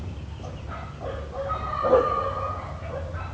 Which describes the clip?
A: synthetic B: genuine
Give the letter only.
B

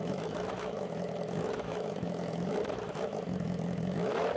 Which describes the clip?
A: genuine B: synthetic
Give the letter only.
B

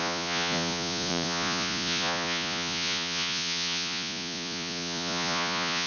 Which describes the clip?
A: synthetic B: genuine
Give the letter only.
A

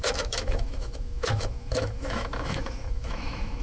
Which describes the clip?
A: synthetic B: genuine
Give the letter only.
A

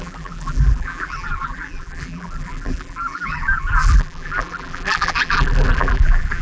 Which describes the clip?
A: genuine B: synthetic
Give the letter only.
B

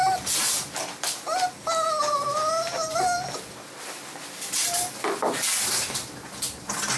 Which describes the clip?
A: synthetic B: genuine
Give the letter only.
B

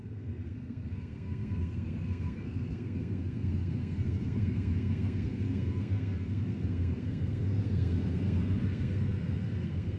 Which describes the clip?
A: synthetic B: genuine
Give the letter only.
A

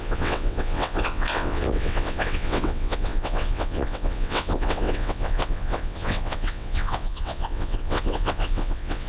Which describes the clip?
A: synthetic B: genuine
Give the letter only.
A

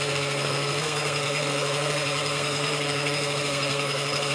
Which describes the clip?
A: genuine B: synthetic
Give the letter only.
B